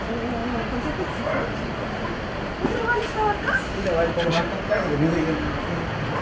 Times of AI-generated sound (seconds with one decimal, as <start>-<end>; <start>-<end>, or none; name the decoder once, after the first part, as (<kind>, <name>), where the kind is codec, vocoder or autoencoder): none